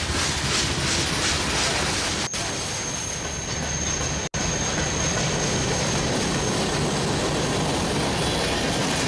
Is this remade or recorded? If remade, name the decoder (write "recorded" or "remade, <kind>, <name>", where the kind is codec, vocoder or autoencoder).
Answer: recorded